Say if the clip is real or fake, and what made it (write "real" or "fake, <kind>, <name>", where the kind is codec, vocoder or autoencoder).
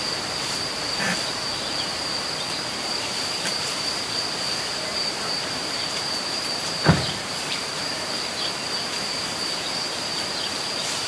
fake, vocoder, BigVGAN v2